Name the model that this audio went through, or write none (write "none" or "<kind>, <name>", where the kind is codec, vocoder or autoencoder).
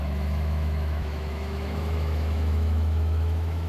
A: autoencoder, DAC-VAE